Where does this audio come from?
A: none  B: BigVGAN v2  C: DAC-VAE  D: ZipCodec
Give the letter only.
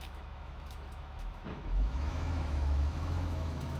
C